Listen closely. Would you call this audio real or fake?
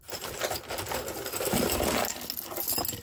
real